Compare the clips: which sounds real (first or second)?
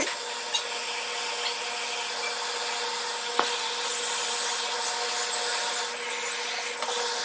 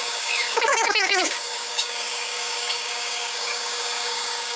first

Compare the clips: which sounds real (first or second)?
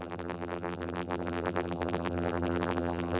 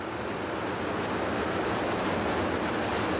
second